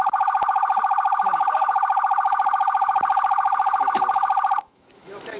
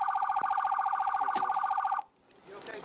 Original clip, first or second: second